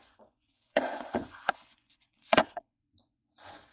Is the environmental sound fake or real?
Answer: fake